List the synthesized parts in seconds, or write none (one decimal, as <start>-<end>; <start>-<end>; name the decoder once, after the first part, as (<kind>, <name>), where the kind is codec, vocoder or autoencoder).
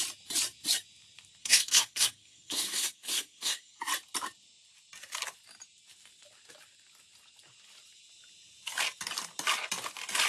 1.4-3.8 (codec, SNAC)